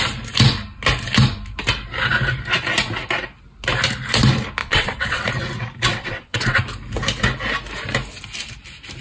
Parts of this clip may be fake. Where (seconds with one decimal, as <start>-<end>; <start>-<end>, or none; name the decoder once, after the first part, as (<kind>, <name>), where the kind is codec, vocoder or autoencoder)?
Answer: 4.6-5.3 (vocoder, WaveNeXt); 5.9-6.6